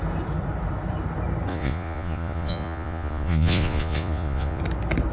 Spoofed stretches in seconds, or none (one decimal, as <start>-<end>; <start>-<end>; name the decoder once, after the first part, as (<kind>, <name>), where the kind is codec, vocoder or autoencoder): 1.5-4.6 (vocoder, Vocos)